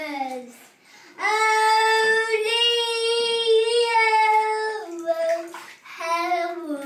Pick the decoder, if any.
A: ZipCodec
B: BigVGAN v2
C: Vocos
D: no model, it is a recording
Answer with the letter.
D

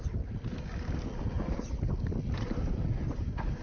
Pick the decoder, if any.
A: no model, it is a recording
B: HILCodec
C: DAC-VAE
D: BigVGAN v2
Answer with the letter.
A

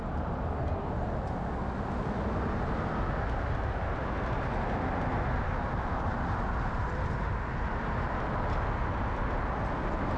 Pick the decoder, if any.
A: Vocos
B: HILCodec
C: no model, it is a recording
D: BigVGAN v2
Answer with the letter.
C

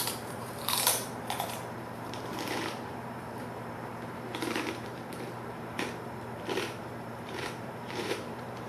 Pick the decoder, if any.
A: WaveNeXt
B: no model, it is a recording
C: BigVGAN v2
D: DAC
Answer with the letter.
C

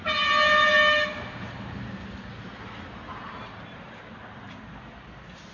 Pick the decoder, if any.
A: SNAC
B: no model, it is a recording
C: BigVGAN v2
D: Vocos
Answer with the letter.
B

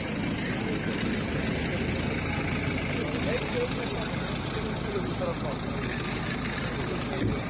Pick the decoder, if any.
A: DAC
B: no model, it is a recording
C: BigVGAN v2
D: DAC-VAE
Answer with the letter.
C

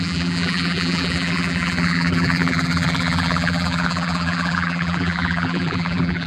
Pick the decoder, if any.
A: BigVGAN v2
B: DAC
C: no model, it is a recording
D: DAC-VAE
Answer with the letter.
A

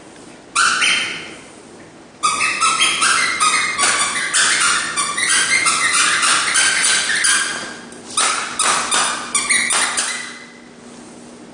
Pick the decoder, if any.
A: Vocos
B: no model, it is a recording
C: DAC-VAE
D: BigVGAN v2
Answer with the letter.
B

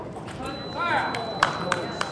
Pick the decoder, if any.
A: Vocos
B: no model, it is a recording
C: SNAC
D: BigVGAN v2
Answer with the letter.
D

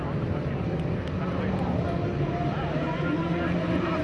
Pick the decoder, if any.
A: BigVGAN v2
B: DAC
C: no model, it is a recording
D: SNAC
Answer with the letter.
C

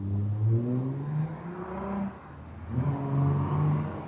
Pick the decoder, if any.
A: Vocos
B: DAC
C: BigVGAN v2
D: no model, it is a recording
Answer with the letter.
D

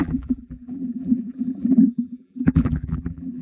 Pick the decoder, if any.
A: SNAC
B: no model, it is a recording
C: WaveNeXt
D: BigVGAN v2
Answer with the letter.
D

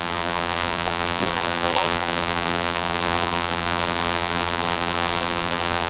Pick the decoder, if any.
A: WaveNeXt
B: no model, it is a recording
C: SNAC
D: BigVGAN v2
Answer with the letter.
D